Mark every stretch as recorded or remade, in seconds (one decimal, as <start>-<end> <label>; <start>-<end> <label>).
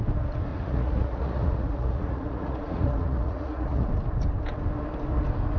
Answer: 0.0-0.5 recorded; 0.5-3.9 remade; 3.9-5.6 recorded